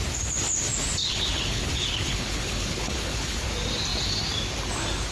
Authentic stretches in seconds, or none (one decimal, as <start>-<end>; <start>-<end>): 0.0-1.0; 3.5-5.1